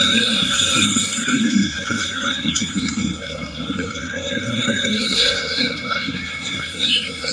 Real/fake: fake